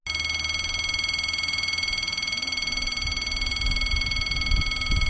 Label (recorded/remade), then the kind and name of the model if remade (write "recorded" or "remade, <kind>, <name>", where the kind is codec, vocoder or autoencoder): recorded